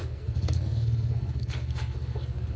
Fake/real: fake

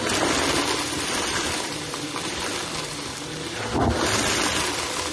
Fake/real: real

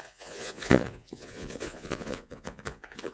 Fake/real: fake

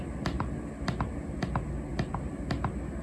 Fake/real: real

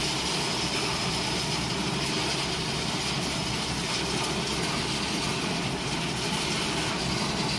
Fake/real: real